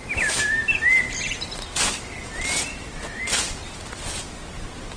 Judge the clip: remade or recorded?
recorded